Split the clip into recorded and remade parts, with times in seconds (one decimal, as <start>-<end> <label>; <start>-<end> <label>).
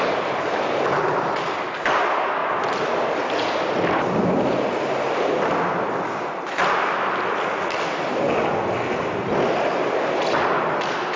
0.0-11.2 recorded